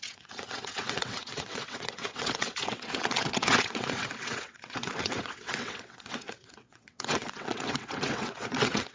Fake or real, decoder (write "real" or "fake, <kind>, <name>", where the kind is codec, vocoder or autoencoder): fake, vocoder, WaveNeXt